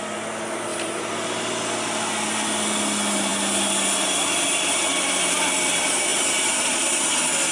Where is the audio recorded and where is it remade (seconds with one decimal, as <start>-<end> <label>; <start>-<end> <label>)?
0.0-0.7 recorded; 0.7-1.3 remade; 1.3-6.1 recorded; 6.1-6.8 remade; 6.8-7.5 recorded